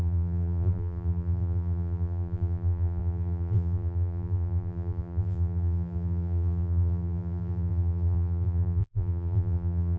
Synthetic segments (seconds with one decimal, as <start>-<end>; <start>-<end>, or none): 0.0-10.0